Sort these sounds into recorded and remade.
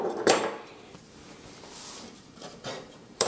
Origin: remade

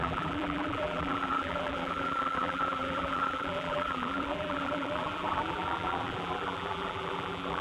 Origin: remade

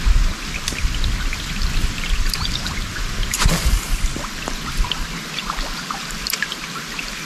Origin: recorded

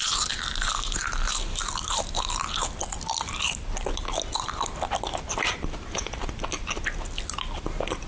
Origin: recorded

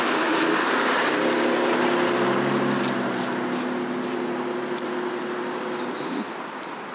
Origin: recorded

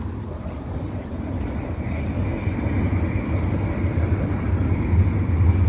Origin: recorded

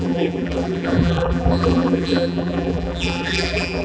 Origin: remade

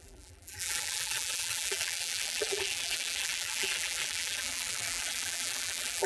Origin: remade